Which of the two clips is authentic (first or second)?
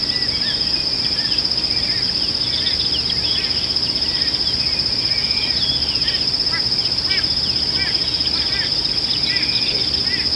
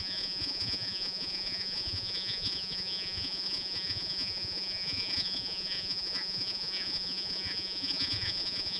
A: first